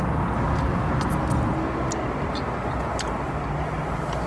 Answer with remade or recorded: recorded